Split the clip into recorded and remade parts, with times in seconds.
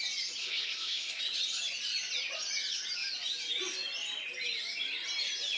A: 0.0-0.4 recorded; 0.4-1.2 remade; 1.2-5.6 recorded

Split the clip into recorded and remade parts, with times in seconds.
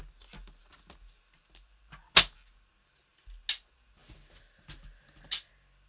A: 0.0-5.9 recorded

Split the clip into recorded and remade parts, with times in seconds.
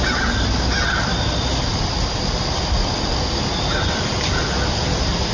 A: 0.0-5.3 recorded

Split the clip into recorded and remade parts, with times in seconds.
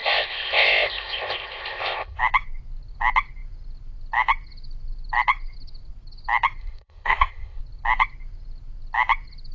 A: 0.0-2.2 remade; 2.2-6.6 recorded; 6.6-7.6 remade; 7.6-9.5 recorded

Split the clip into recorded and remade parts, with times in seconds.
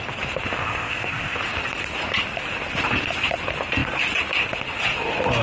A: 0.0-0.5 recorded; 0.5-1.4 remade; 1.4-5.4 recorded